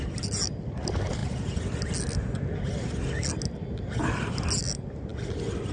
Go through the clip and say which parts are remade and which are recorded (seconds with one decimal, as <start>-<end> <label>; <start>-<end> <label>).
0.0-5.7 recorded